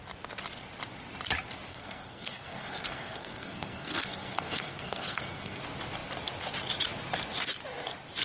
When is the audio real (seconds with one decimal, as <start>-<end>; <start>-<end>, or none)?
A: 0.0-1.7; 5.6-8.2